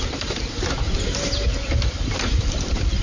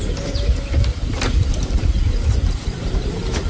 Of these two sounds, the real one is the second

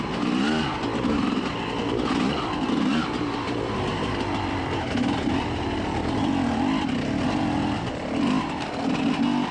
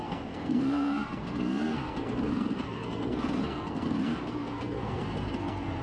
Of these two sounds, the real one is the first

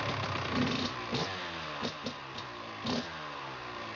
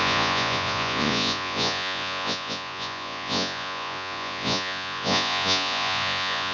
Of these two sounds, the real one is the first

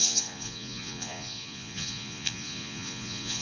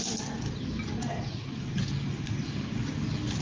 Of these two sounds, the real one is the second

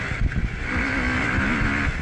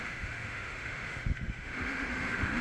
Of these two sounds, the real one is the first